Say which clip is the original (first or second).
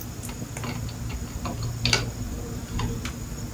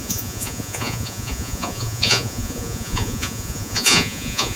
first